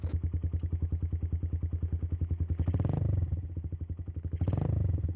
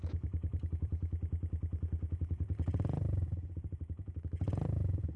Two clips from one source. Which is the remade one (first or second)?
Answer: second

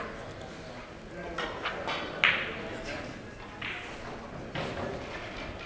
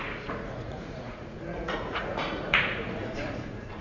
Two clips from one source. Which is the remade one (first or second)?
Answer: second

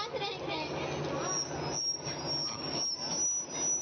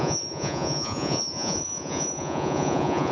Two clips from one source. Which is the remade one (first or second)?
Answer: second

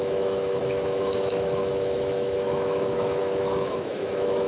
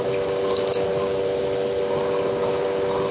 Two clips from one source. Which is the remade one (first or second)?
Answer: first